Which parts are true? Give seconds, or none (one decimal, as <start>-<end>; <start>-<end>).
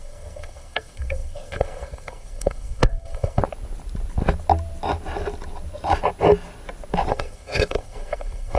3.4-7.1